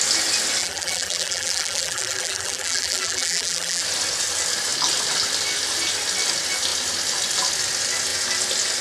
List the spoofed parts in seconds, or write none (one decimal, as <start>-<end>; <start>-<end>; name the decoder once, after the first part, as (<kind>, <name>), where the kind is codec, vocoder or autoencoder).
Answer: 0.6-3.8 (vocoder, BigVGAN v2)